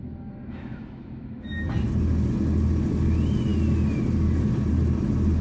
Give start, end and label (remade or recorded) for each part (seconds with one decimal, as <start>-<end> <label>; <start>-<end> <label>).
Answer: 0.0-5.4 recorded